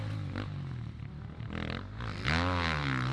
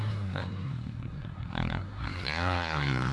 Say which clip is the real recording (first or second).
first